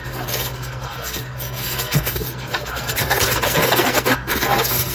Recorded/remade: remade